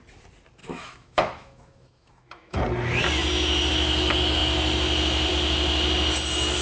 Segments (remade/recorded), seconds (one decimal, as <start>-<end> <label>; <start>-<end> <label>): 0.0-0.6 recorded; 0.6-2.6 remade; 2.6-6.6 recorded